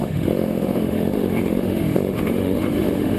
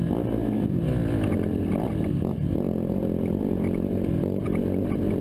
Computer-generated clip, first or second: first